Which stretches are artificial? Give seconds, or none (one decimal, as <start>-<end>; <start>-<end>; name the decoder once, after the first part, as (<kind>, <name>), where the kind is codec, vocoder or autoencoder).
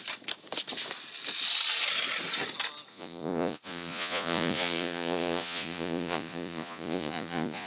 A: 2.9-7.7 (vocoder, Vocos)